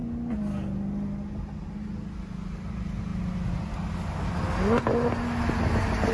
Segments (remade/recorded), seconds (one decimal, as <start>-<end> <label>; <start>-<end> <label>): 0.0-6.1 recorded